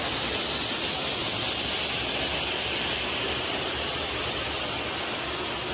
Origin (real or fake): real